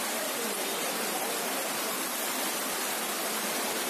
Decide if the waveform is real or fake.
real